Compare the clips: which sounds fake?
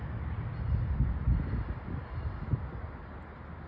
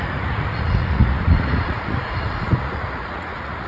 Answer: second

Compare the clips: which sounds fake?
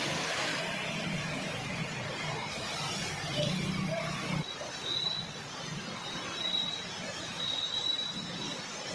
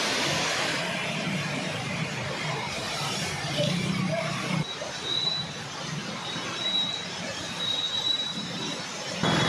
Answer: second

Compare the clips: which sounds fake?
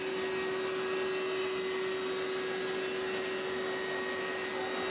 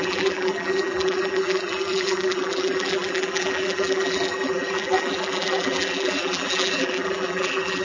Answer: second